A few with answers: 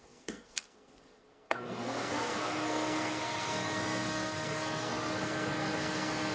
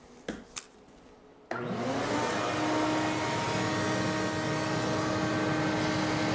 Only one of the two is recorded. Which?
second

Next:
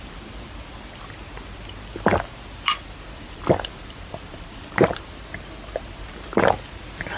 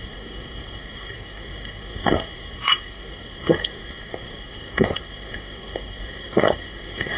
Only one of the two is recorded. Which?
first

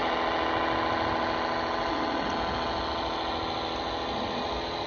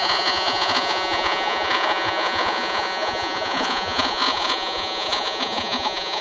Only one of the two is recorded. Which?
first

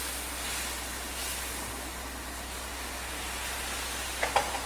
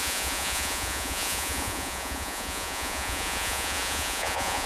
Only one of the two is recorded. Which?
first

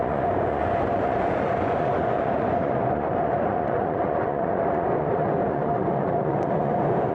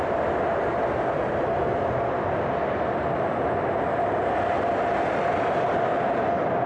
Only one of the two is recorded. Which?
second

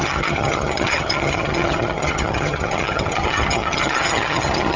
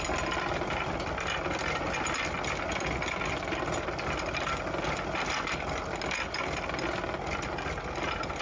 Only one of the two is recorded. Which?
second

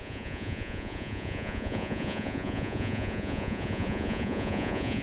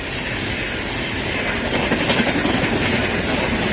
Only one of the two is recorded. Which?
second